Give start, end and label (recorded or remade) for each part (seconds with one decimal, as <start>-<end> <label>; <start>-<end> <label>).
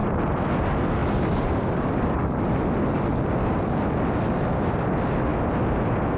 0.0-0.6 remade; 0.6-1.0 recorded; 1.0-3.8 remade; 3.8-6.2 recorded